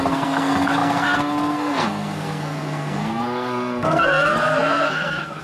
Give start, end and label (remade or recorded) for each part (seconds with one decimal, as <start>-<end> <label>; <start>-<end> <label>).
0.0-5.4 remade